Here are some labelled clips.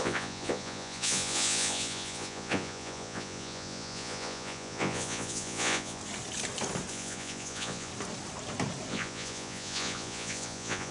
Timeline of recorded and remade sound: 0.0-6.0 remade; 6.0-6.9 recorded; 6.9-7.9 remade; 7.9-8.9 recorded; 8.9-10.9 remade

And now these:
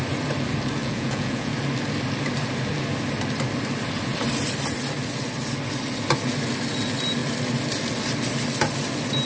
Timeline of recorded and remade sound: 0.0-0.8 recorded; 0.8-1.5 remade; 1.5-9.3 recorded

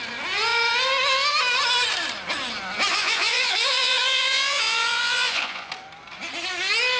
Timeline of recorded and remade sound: 0.0-2.9 recorded; 2.9-5.7 remade; 5.7-7.0 recorded

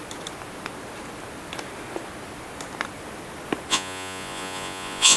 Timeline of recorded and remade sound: 0.0-3.7 recorded; 3.7-5.2 remade

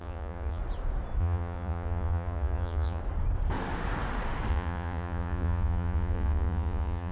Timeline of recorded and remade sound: 0.0-0.6 remade; 0.6-1.2 recorded; 1.2-3.0 remade; 3.0-4.5 recorded; 4.5-7.1 remade

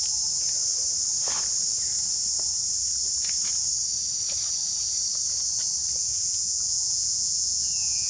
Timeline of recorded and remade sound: 0.0-6.0 recorded; 6.0-8.1 remade